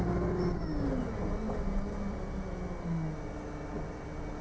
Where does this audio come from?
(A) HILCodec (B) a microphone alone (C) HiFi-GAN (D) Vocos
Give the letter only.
B